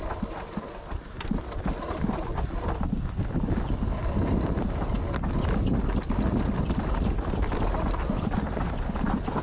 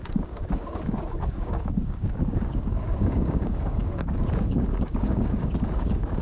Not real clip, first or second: second